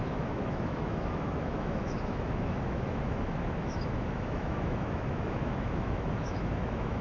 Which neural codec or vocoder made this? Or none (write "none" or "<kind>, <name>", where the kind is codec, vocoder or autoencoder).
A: autoencoder, DAC-VAE